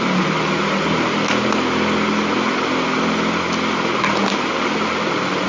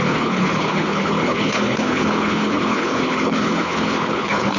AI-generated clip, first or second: second